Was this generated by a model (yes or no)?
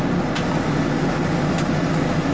no